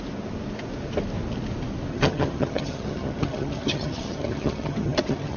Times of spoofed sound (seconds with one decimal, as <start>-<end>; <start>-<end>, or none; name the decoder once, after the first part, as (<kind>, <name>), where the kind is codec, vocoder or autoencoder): 1.9-5.4 (vocoder, HiFi-GAN)